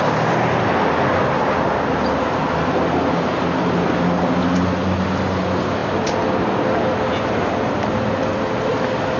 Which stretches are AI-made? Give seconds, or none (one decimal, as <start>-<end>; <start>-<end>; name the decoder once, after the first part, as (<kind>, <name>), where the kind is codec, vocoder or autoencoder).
none